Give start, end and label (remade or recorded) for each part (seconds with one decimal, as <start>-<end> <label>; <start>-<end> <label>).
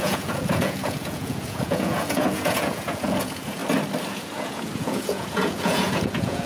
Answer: 0.0-3.6 remade; 3.6-4.1 recorded; 4.1-6.5 remade